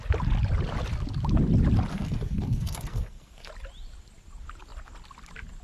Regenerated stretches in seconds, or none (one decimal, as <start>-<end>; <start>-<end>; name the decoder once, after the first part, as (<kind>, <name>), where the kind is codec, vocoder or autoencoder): 1.9-3.5 (codec, SNAC)